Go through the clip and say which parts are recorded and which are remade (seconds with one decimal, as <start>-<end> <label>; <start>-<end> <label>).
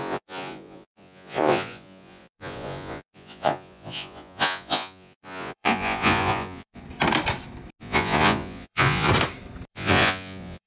0.0-6.8 remade; 6.8-7.8 recorded; 7.8-9.1 remade; 9.1-9.7 recorded; 9.7-10.7 remade